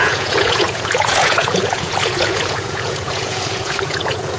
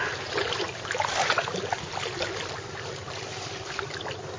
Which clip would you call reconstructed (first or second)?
first